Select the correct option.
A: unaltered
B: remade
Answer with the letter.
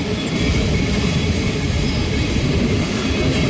A